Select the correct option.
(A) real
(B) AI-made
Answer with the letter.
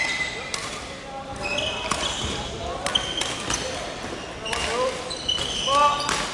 A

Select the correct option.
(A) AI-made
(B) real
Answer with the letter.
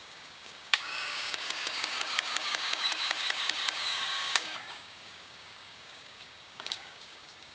A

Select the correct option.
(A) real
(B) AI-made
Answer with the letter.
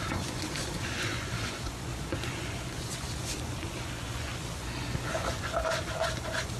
B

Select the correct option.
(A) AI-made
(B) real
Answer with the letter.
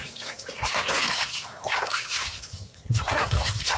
A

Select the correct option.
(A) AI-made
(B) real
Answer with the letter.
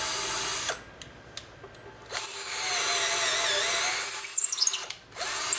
B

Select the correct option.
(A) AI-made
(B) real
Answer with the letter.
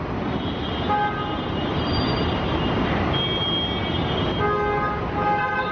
B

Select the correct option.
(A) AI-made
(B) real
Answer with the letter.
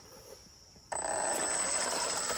B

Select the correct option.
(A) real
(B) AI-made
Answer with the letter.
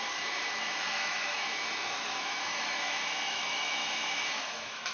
B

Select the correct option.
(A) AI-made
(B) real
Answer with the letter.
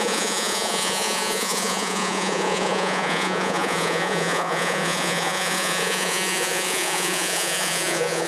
A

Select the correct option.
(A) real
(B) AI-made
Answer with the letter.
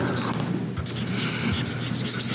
A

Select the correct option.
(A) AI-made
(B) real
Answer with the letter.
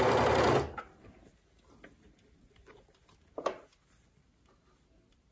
B